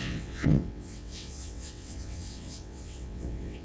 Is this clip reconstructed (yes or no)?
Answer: yes